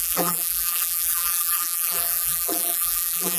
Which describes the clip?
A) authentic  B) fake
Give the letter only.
B